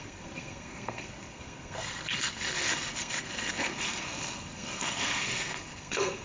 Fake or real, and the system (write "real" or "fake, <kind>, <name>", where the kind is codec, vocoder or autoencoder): fake, codec, SNAC